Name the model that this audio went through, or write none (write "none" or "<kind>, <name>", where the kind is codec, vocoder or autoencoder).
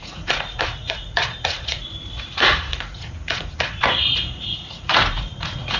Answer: vocoder, Vocos